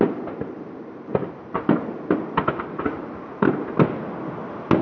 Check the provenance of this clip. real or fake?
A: real